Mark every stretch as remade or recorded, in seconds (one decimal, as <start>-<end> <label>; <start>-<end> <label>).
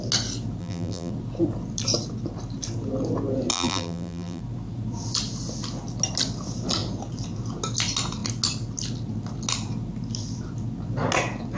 0.0-0.6 recorded; 0.6-1.1 remade; 1.1-3.5 recorded; 3.5-4.4 remade; 4.4-11.6 recorded